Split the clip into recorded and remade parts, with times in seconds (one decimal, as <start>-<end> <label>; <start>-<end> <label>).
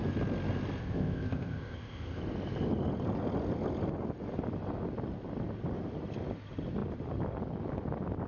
0.0-0.8 recorded; 0.8-2.2 remade; 2.2-8.3 recorded